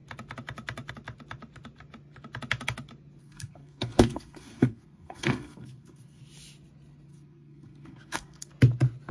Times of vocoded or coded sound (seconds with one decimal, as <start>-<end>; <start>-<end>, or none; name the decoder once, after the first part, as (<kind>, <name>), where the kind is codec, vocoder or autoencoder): 3.2-6.2 (codec, SNAC); 7.1-8.5